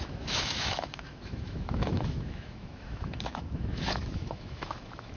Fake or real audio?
fake